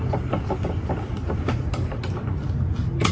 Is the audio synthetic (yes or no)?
no